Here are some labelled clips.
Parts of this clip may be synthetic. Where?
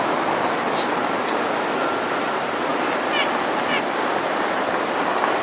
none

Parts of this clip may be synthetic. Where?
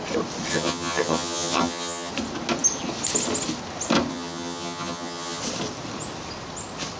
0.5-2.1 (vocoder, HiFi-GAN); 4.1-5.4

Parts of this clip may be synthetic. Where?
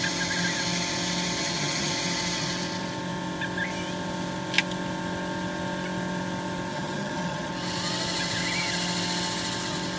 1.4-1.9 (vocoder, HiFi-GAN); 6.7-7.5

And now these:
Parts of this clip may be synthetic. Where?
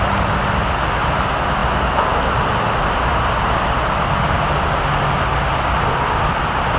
none